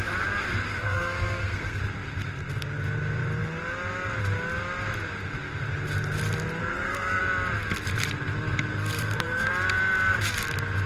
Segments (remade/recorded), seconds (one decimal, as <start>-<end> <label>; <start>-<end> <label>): 0.0-0.7 recorded; 0.7-1.8 remade; 1.8-6.6 recorded; 6.6-7.2 remade; 7.2-8.7 recorded; 8.7-9.5 remade; 9.5-10.9 recorded